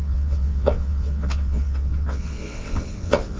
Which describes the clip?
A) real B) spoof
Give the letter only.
B